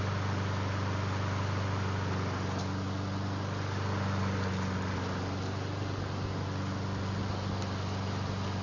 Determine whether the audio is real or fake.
real